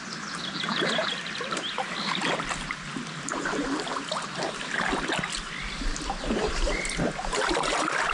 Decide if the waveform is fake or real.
real